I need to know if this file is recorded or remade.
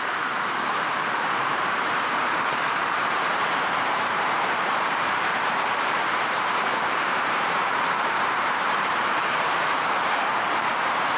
remade